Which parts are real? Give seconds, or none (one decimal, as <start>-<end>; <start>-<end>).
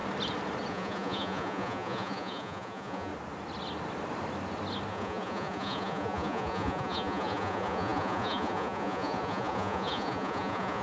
0.0-0.7; 3.1-4.9